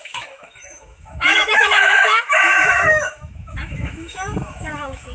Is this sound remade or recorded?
remade